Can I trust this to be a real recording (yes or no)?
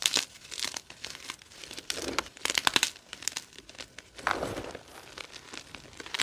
yes